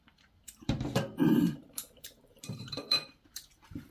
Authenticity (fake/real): fake